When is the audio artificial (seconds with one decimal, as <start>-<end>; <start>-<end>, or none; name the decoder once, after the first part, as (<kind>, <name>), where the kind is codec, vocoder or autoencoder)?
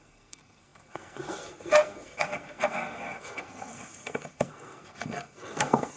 0.0-6.0 (codec, SNAC)